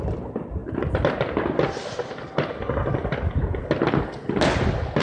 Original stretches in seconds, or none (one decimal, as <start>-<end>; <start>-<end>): 0.0-5.0